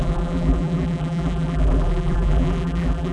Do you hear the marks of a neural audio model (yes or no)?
yes